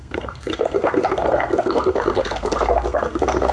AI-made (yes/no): yes